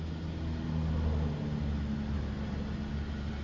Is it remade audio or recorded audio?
recorded